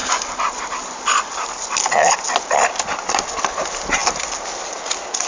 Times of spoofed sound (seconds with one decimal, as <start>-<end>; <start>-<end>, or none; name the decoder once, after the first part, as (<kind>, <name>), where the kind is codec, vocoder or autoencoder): none